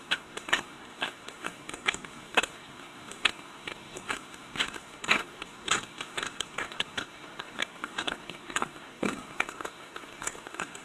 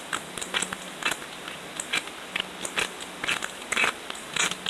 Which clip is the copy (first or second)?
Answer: first